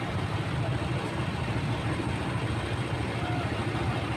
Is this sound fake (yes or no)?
no